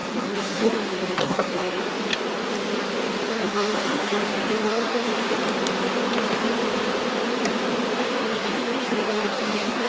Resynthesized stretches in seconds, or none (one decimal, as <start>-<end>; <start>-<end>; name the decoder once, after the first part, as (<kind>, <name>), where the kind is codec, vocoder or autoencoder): 0.0-1.8 (codec, SNAC); 3.3-5.1; 8.1-9.9